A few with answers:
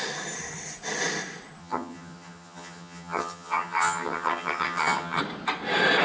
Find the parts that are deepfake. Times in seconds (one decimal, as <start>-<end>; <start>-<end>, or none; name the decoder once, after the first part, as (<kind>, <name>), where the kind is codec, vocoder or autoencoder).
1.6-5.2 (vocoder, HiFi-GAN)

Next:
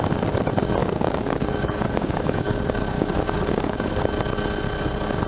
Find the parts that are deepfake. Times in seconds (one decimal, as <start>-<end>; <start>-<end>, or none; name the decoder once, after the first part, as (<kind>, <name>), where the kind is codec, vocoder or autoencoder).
0.8-4.0 (codec, DAC)

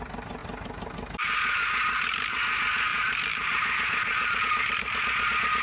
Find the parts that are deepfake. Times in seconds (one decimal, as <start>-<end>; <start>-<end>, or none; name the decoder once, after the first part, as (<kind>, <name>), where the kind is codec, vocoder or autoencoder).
2.9-4.4 (vocoder, BigVGAN v2)

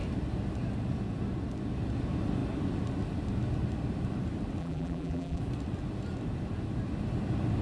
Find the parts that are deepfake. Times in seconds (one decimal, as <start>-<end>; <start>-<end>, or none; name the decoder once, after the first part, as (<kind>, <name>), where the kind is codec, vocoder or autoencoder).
4.6-5.4 (vocoder, BigVGAN v2)

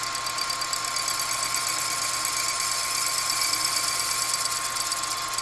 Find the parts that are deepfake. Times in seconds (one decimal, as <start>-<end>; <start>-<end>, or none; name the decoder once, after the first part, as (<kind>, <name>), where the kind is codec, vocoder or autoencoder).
none